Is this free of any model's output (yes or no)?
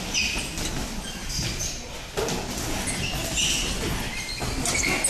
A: yes